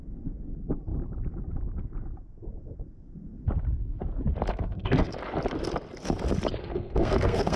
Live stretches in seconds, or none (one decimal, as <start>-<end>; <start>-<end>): 0.0-4.5; 5.1-6.6